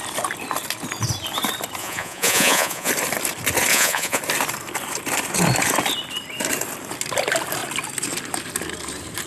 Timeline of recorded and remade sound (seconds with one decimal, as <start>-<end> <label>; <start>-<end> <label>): 0.0-1.8 recorded; 1.8-2.9 remade; 2.9-3.7 recorded; 3.7-4.2 remade; 4.2-9.3 recorded